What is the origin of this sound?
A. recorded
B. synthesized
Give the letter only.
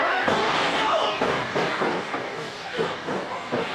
B